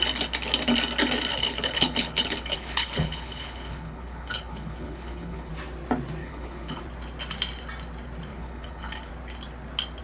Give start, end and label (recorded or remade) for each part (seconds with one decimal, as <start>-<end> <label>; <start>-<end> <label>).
0.0-1.3 recorded; 1.3-5.5 remade; 5.5-6.2 recorded; 6.2-6.8 remade; 6.8-8.3 recorded; 8.3-9.1 remade; 9.1-10.0 recorded